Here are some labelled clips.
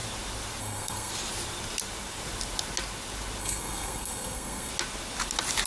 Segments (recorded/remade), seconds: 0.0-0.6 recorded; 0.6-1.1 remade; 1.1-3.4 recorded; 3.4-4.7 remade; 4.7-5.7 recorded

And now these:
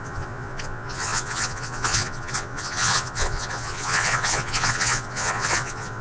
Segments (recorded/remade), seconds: 0.0-6.0 remade

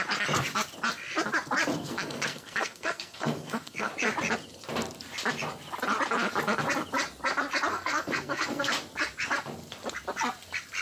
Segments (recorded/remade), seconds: 0.0-1.8 recorded; 1.8-3.9 remade; 3.9-7.7 recorded; 7.7-8.7 remade; 8.7-10.8 recorded

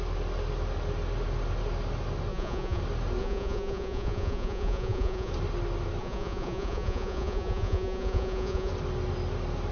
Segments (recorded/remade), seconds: 0.0-2.3 recorded; 2.3-2.8 remade; 2.8-3.2 recorded; 3.2-5.3 remade; 5.3-6.0 recorded; 6.0-8.7 remade; 8.7-9.7 recorded

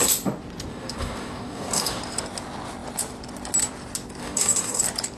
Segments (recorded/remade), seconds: 0.0-0.7 recorded; 0.7-2.0 remade; 2.0-4.2 recorded; 4.2-4.8 remade; 4.8-5.2 recorded

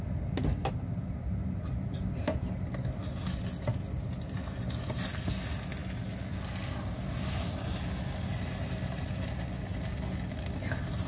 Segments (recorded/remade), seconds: 0.0-11.1 recorded